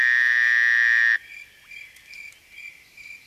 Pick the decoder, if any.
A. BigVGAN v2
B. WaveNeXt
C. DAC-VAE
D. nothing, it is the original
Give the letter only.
D